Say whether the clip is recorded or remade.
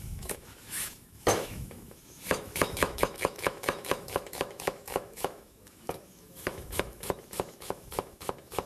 remade